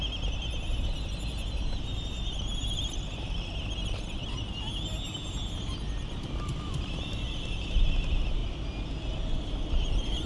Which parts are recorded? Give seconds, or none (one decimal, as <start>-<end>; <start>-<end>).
4.2-6.1; 8.4-9.7